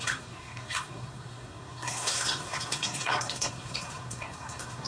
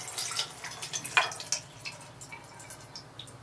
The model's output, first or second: first